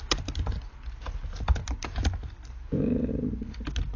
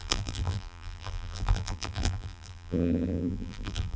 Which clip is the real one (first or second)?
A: first